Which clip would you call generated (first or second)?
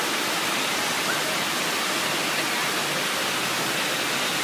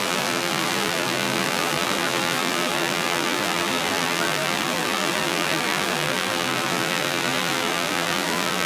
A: second